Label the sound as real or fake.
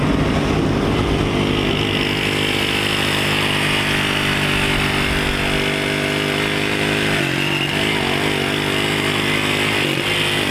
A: real